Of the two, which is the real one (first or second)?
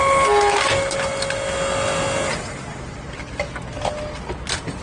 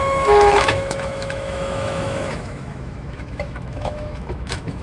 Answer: first